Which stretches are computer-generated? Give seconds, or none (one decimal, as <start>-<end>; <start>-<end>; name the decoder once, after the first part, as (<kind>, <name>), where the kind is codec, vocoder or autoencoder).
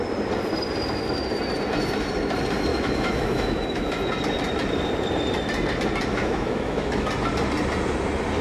2.7-3.9 (autoencoder, DAC-VAE); 6.1-7.1